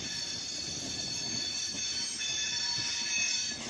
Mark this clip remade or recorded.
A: recorded